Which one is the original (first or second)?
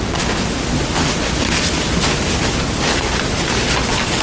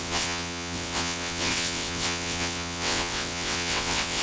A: first